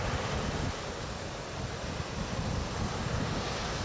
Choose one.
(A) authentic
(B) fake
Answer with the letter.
A